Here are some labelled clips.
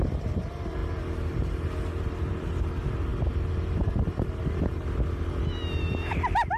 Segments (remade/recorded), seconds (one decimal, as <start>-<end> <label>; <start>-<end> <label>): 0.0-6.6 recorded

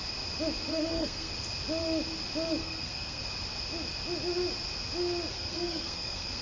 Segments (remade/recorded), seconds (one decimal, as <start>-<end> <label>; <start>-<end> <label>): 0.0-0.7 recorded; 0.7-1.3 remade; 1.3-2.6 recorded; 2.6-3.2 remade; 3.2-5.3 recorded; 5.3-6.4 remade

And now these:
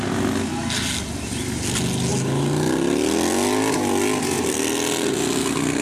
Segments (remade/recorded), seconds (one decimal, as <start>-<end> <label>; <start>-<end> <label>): 0.0-5.8 recorded

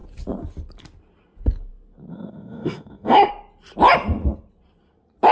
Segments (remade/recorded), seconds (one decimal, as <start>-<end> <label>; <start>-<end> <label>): 0.0-2.1 recorded; 2.1-3.3 remade; 3.3-5.3 recorded

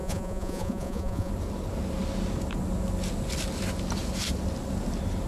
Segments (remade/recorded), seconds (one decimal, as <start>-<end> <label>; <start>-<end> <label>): 0.0-1.3 remade; 1.3-5.3 recorded